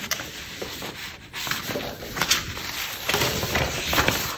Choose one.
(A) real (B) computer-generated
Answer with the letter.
A